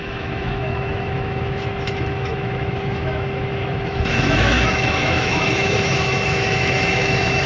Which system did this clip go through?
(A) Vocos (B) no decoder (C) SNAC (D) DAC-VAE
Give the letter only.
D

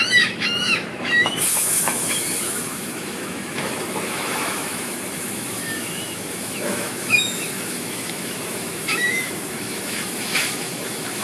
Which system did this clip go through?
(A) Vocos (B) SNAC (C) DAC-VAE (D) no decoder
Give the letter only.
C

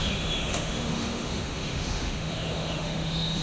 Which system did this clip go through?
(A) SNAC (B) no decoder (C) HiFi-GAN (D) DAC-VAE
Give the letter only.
D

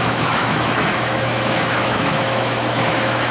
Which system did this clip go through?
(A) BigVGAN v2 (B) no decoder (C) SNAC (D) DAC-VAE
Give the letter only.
D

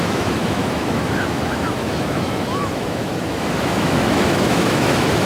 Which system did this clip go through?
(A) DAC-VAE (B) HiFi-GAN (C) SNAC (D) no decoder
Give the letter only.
A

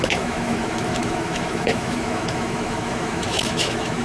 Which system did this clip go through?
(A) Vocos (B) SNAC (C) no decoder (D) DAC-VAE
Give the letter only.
D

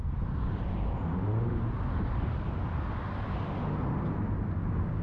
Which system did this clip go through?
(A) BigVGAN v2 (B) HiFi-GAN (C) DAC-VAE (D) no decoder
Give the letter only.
D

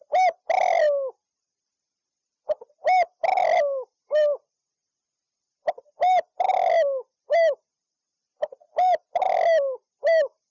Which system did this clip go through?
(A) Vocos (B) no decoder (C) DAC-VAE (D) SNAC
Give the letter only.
B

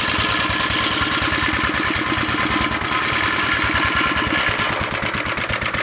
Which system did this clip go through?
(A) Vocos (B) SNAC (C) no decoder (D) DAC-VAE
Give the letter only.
C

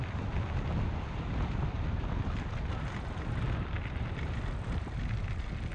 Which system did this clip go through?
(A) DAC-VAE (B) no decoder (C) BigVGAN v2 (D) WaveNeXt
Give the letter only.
B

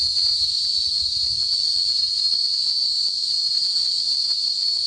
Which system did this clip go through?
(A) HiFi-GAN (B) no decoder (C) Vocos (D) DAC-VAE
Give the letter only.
B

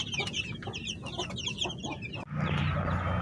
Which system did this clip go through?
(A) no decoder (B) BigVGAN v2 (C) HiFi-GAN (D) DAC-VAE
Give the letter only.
A